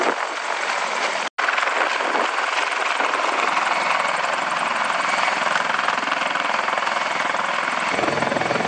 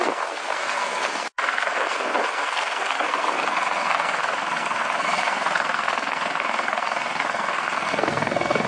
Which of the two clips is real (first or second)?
first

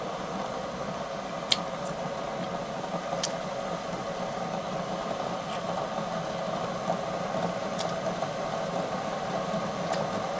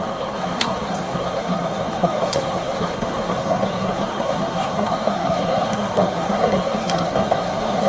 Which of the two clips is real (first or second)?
first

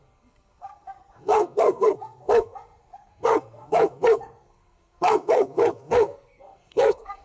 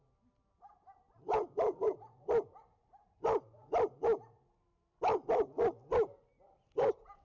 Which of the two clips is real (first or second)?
second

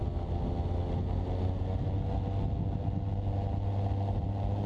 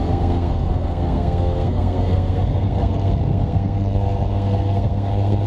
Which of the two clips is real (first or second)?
first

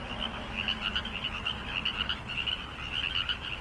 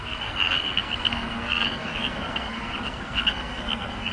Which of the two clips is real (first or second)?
first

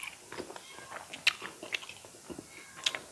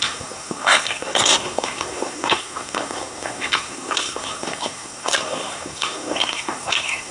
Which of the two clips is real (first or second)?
first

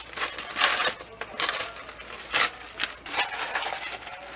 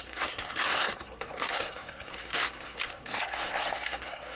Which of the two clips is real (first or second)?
first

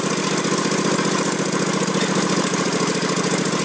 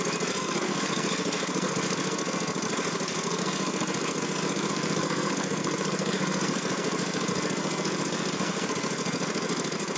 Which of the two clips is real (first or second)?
first